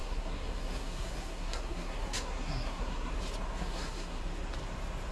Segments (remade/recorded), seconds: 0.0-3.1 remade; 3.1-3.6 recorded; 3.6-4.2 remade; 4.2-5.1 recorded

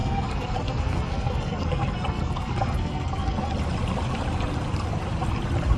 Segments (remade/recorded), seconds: 0.0-3.5 remade; 3.5-5.8 recorded

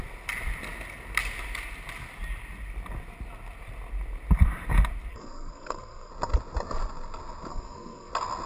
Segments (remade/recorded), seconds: 0.0-5.1 recorded; 5.1-6.1 remade; 6.1-7.5 recorded; 7.5-8.1 remade; 8.1-8.5 recorded